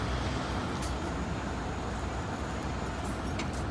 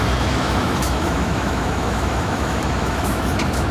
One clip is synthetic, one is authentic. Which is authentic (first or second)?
first